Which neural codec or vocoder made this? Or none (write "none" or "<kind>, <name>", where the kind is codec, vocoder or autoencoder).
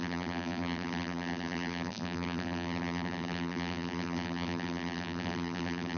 vocoder, BigVGAN v2